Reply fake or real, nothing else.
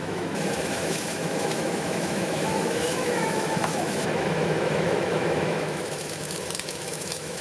fake